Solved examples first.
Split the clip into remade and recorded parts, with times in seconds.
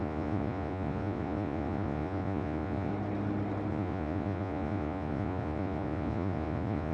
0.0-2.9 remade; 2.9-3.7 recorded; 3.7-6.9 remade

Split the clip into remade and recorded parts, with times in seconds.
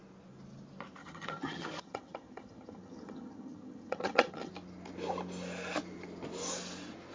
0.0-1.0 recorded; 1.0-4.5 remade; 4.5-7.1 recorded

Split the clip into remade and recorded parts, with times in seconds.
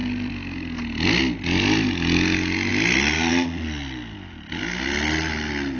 0.0-5.8 recorded